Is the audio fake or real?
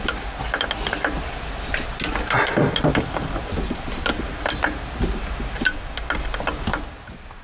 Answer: real